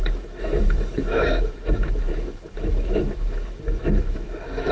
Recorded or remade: remade